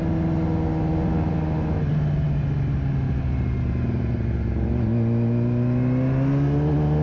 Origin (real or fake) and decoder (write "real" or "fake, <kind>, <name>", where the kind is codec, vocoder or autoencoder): real